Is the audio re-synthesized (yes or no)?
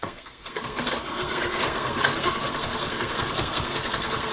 yes